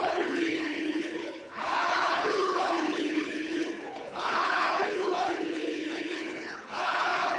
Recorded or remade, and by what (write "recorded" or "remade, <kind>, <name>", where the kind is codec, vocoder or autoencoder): remade, codec, HILCodec